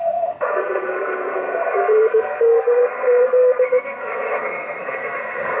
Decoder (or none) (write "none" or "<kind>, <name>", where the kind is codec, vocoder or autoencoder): codec, SNAC